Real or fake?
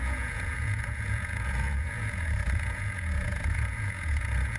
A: fake